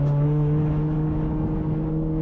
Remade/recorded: remade